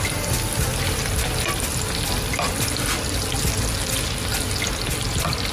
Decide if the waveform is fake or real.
real